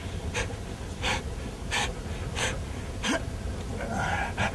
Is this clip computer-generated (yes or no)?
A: no